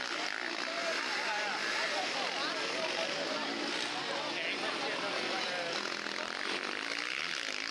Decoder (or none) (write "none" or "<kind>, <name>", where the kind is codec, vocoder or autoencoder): none